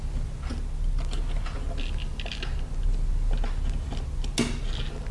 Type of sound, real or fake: real